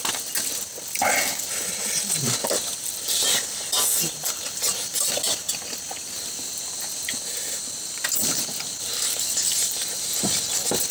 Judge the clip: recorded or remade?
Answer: recorded